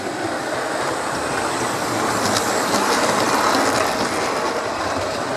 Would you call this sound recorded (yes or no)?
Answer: yes